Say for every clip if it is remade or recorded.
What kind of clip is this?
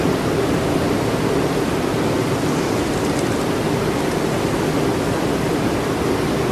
recorded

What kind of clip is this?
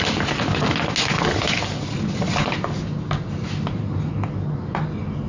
recorded